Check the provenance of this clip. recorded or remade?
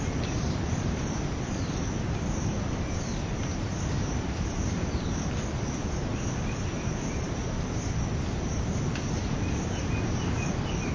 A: recorded